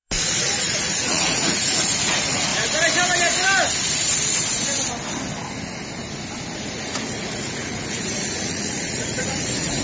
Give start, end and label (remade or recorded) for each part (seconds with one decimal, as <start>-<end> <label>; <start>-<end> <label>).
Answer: 0.0-2.5 remade; 2.5-6.8 recorded; 6.8-9.8 remade